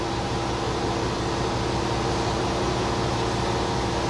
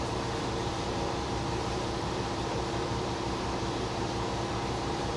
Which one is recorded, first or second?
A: first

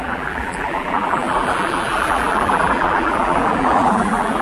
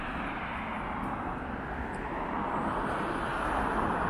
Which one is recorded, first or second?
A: second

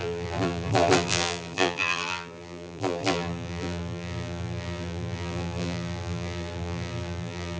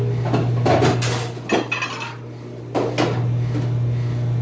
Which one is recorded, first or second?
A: second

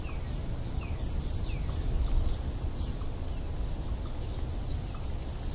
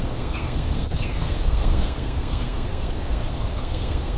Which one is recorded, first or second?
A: first